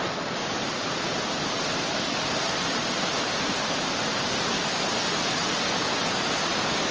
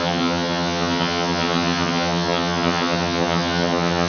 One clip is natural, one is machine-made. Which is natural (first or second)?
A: first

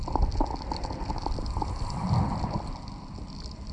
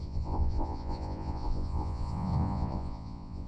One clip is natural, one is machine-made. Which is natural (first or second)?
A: first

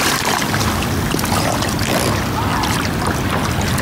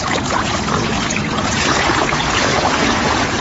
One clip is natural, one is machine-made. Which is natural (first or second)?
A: first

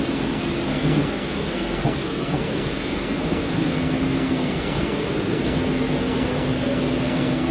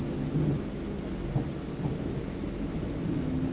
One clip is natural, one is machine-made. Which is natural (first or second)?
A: second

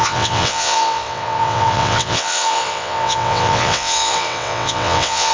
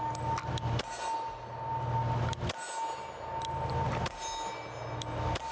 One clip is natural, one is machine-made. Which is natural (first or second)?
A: second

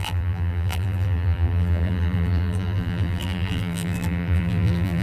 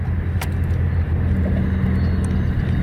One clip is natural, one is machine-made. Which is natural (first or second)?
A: second